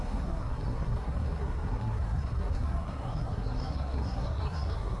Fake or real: fake